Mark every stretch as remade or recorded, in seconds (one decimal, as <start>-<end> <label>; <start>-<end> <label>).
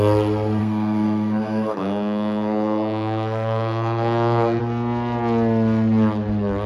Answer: 0.0-0.6 recorded; 0.6-4.6 remade; 4.6-6.7 recorded